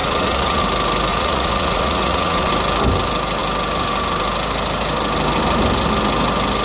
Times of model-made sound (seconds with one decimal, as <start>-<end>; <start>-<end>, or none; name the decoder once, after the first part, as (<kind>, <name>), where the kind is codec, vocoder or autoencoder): 0.0-0.6 (vocoder, Vocos); 1.1-2.5